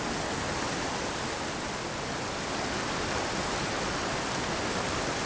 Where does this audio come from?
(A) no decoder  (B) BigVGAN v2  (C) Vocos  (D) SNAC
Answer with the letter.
A